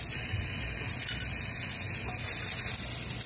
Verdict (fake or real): real